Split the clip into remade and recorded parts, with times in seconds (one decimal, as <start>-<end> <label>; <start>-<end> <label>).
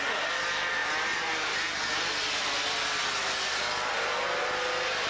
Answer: 0.0-5.1 recorded